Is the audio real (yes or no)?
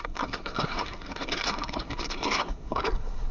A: no